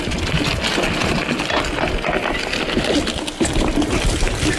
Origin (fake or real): real